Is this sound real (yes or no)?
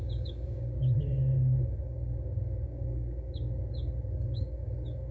no